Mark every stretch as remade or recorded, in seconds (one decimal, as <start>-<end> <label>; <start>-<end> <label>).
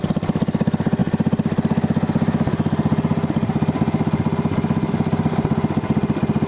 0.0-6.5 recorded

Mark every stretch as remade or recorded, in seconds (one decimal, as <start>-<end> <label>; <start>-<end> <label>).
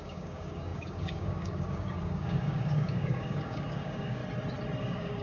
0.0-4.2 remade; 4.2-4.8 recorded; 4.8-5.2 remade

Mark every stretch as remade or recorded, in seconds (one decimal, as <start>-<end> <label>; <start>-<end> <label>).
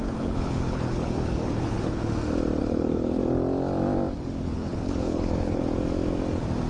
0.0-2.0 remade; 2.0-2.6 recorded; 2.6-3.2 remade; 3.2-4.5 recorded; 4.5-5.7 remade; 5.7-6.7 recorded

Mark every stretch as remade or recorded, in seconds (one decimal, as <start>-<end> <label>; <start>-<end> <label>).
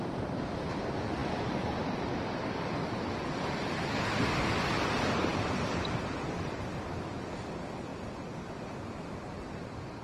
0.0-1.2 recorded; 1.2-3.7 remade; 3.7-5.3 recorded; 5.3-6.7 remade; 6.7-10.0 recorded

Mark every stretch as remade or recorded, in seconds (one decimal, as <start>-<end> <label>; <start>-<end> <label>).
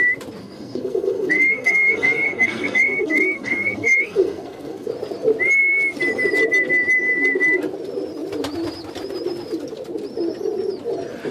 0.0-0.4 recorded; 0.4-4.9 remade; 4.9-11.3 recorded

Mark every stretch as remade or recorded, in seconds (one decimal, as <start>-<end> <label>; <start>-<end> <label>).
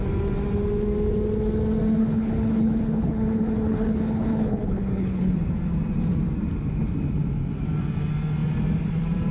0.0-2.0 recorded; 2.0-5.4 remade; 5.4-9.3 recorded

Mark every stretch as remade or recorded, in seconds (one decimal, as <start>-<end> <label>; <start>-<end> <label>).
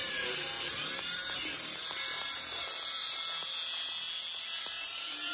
0.0-3.2 remade; 3.2-4.6 recorded; 4.6-5.3 remade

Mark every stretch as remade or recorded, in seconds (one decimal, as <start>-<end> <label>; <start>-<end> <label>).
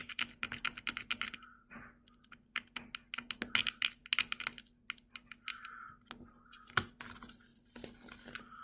0.0-8.6 recorded